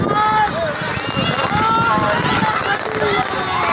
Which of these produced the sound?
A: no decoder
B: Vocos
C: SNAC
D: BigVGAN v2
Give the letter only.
A